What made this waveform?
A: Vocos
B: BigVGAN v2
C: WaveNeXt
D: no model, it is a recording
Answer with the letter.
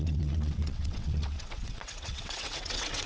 C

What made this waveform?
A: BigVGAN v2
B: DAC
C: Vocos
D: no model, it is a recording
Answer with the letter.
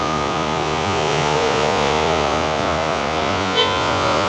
C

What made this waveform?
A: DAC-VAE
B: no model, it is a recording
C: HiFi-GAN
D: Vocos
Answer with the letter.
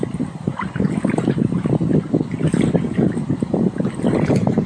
B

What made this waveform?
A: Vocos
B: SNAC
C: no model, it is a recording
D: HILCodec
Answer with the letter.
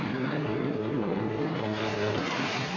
B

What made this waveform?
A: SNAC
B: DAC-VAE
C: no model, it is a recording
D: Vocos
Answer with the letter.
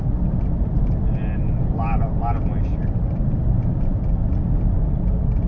C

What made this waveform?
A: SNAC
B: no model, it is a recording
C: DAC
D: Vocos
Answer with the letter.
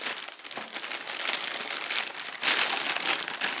B